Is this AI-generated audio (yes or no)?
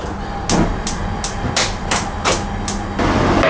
no